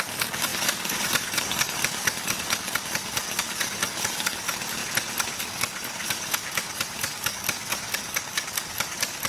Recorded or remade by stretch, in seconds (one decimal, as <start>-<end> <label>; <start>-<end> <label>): 0.0-4.8 remade; 4.8-5.4 recorded; 5.4-9.3 remade